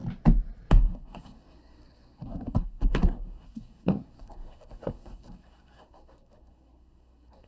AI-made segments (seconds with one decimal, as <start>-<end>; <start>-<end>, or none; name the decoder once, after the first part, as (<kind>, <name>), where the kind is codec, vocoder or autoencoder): 0.7-7.5 (codec, SNAC)